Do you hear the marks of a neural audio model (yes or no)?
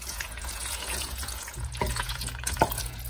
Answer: yes